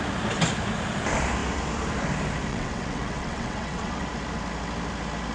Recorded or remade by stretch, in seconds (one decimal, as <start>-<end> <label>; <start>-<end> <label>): 0.0-2.5 recorded; 2.5-4.1 remade; 4.1-5.3 recorded